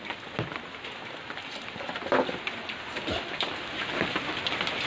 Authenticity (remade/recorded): recorded